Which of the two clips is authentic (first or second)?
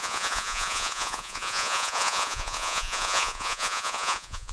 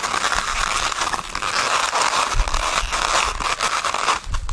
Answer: second